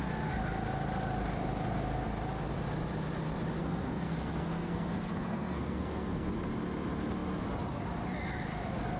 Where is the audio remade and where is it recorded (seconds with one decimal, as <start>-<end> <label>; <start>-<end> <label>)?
0.0-3.6 recorded; 3.6-6.3 remade; 6.3-9.0 recorded